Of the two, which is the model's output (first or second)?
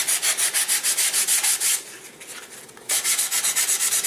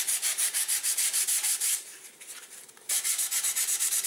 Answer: second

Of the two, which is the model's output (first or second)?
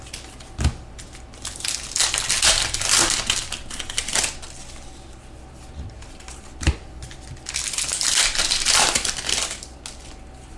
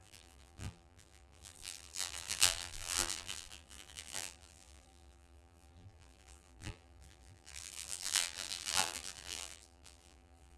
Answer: second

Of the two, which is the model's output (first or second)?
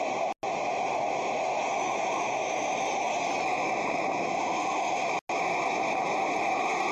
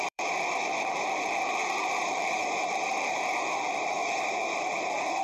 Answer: second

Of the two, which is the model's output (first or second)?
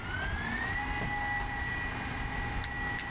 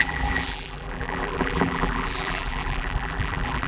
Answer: second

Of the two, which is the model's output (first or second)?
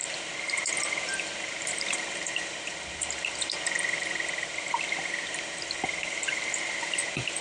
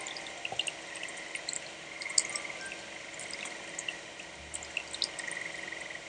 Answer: first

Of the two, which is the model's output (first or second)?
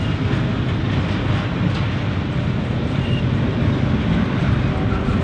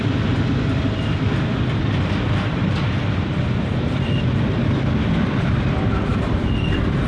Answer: second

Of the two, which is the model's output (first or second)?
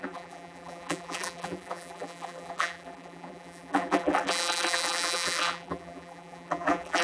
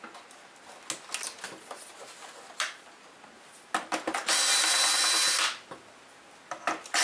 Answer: first